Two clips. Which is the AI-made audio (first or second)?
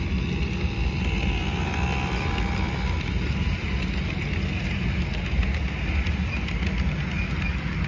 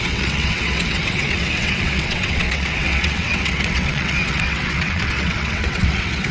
second